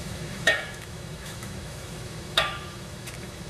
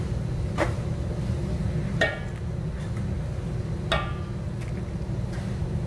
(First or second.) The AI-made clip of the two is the first